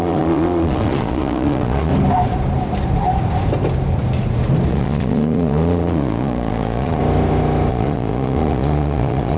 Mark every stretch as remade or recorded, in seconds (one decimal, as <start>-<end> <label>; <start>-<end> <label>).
0.0-1.9 remade; 1.9-4.7 recorded; 4.7-7.0 remade; 7.0-7.7 recorded; 7.7-9.4 remade